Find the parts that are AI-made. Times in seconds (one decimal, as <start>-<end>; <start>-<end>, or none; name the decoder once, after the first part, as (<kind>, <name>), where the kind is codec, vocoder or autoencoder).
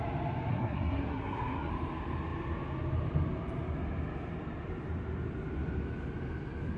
0.5-1.7 (codec, SNAC)